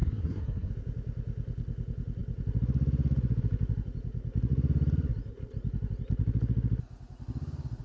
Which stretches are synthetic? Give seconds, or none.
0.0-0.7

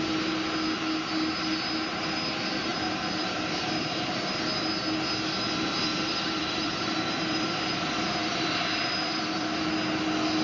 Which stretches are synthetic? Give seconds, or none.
2.7-3.9; 5.9-9.6

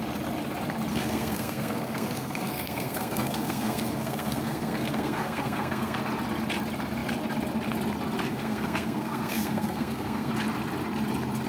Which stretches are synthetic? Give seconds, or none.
0.9-6.0; 8.3-10.3

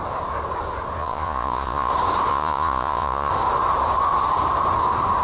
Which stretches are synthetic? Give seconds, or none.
1.0-1.9; 2.3-3.3